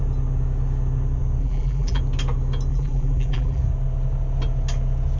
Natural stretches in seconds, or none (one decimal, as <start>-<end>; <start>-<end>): 0.0-1.4; 2.0-2.7; 3.6-5.2